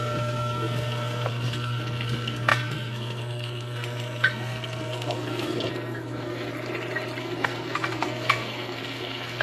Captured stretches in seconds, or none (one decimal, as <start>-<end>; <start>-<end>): 6.5-7.2